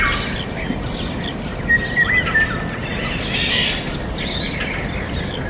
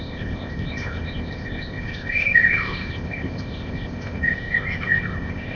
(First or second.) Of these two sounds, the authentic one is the first